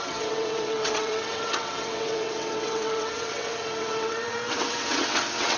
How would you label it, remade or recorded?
remade